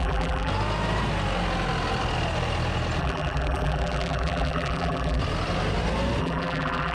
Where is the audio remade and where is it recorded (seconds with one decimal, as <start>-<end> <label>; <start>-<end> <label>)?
0.0-0.5 remade; 0.5-3.0 recorded; 3.0-5.2 remade; 5.2-6.2 recorded; 6.2-6.9 remade